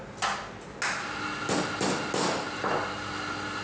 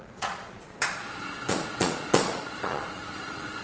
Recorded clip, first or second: first